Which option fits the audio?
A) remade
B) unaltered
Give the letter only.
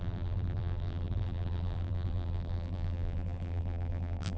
A